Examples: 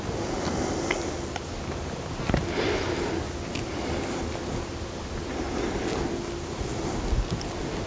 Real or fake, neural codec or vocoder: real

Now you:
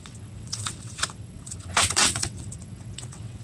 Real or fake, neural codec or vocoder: fake, vocoder, WaveNeXt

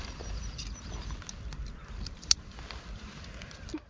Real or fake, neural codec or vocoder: real